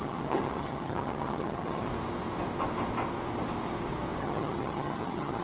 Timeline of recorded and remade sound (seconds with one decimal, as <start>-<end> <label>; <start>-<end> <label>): 0.0-1.9 remade; 1.9-4.2 recorded; 4.2-5.4 remade